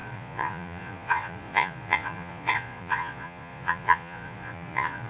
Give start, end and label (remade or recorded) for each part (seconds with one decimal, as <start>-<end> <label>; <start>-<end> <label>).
0.0-5.1 remade